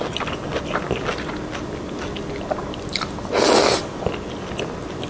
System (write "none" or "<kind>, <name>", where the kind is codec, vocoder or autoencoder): none